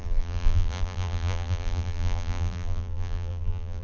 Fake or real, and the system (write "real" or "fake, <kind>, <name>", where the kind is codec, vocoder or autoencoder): fake, vocoder, BigVGAN v2